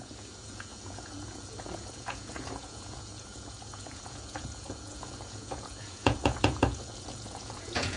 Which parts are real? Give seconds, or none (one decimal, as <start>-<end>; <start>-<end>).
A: none

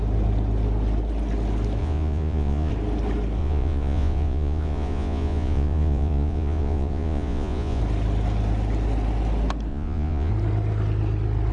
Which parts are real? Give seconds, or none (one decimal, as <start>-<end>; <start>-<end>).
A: 0.0-1.8; 2.7-3.4; 7.8-9.7; 10.3-11.5

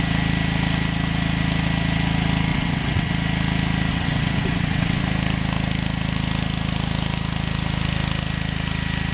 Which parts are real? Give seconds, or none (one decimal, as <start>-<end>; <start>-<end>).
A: 0.0-2.5; 3.1-3.9; 5.0-9.1

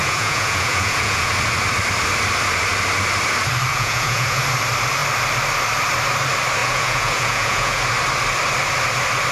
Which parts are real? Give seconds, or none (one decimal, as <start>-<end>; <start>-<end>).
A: 1.3-3.7; 4.4-6.6; 7.8-9.3

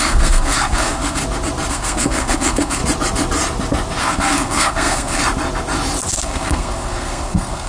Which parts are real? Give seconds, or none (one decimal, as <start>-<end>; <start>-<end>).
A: 1.2-1.7; 2.8-4.0; 5.2-6.1

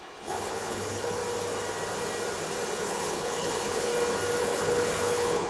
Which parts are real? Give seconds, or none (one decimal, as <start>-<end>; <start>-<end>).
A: 1.2-2.8; 3.9-4.4

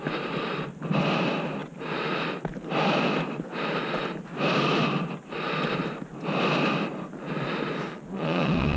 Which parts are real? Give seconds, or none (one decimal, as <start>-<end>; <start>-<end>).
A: 0.0-7.9